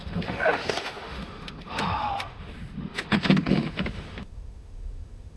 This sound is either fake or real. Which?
fake